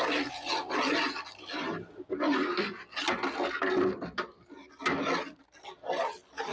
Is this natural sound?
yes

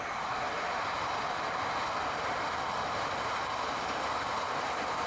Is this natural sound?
yes